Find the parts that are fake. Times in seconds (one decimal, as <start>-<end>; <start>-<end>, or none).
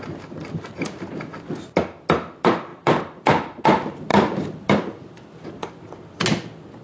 2.7-3.6; 4.1-5.7